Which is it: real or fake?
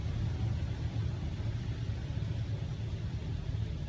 real